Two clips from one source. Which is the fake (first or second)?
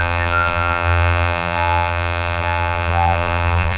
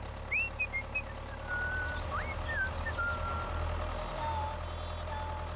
first